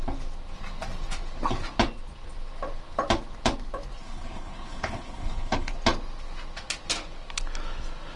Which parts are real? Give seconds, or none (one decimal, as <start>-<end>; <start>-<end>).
0.0-4.0; 5.7-8.2